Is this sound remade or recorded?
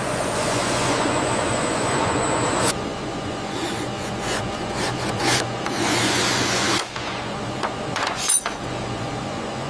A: remade